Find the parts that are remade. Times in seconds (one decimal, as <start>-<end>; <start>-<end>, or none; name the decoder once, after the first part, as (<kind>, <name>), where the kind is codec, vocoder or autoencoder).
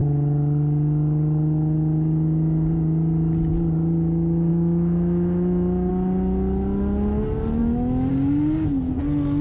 4.5-5.9 (autoencoder, DAC-VAE); 7.6-8.1